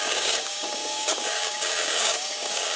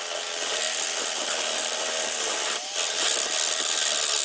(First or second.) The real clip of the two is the second